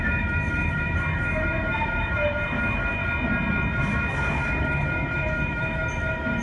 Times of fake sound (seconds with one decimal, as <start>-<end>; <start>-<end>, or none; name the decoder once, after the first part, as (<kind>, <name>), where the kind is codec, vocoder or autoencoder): 0.0-3.0 (autoencoder, DAC-VAE); 3.8-6.4